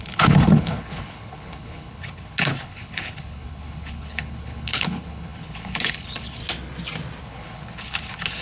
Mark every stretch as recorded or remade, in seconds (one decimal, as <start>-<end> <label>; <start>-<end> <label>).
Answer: 0.0-6.4 remade; 6.4-7.2 recorded; 7.2-8.4 remade